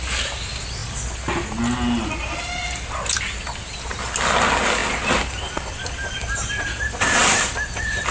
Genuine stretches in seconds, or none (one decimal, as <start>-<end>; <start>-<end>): 0.0-8.1